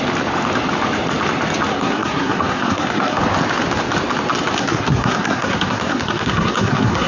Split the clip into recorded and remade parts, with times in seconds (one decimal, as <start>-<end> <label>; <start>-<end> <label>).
0.0-1.7 recorded; 1.7-3.2 remade; 3.2-4.6 recorded; 4.6-7.1 remade